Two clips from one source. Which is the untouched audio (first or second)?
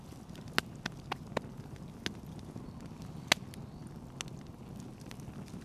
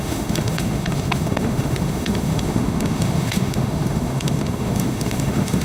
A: first